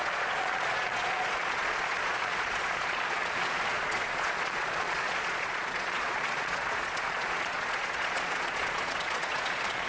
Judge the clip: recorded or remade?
remade